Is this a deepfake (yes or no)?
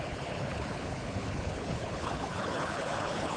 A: yes